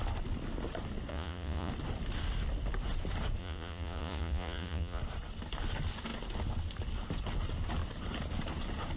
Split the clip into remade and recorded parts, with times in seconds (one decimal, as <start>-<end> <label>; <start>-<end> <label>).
0.0-1.1 recorded; 1.1-1.7 remade; 1.7-3.4 recorded; 3.4-5.0 remade; 5.0-9.0 recorded